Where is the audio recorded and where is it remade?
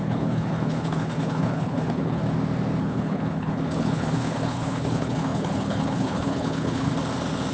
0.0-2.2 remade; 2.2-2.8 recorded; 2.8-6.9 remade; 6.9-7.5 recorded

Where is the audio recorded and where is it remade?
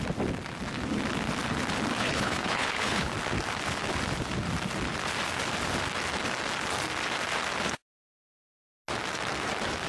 0.0-2.0 recorded; 2.0-3.1 remade; 3.1-9.9 recorded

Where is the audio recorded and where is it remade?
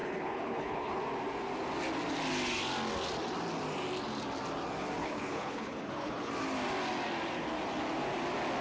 0.0-1.0 remade; 1.0-5.0 recorded; 5.0-6.3 remade; 6.3-8.6 recorded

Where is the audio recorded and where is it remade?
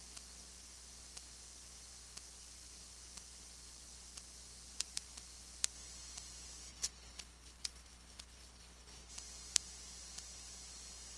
0.0-6.7 recorded; 6.7-9.1 remade; 9.1-11.2 recorded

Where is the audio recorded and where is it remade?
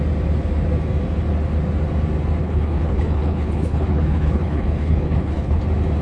0.0-2.4 recorded; 2.4-5.6 remade; 5.6-6.0 recorded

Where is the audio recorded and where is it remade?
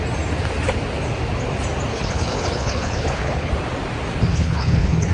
0.0-1.9 recorded; 1.9-3.5 remade; 3.5-4.3 recorded; 4.3-5.1 remade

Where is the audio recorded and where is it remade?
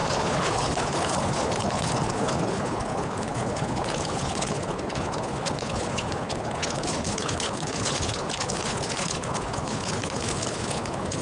0.0-11.2 remade